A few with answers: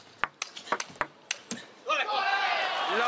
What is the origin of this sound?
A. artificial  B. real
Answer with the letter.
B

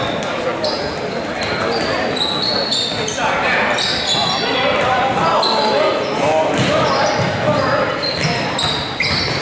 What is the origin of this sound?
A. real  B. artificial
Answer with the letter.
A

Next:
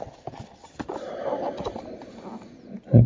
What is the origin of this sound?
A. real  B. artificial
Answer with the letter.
A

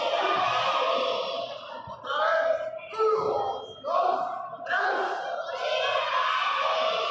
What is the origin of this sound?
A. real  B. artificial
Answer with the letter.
A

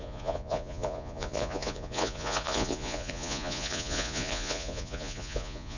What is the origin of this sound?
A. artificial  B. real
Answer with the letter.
A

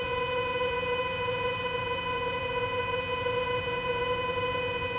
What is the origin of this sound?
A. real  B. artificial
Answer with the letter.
B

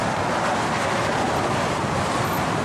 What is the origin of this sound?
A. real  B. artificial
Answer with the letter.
A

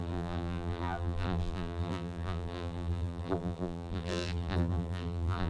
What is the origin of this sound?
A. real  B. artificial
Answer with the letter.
B